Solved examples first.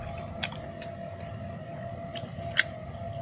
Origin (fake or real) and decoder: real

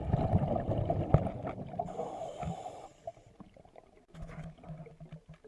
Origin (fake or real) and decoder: real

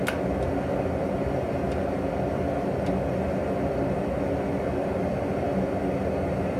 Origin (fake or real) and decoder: real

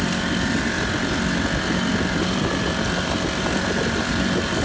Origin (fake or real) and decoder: fake, vocoder, BigVGAN v2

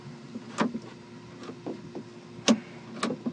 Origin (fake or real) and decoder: real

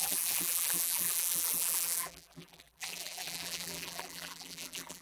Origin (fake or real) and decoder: fake, vocoder, BigVGAN v2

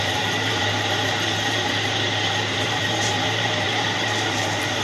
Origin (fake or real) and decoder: fake, vocoder, BigVGAN v2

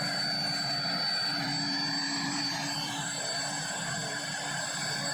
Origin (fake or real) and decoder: fake, vocoder, BigVGAN v2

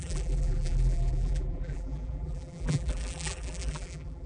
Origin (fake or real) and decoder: fake, vocoder, BigVGAN v2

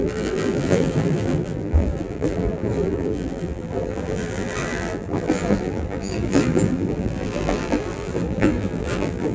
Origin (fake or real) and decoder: fake, vocoder, BigVGAN v2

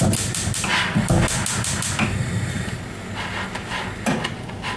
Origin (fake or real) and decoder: real